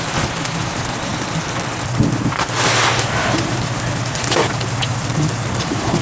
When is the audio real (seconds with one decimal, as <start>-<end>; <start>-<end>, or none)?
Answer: 0.0-6.0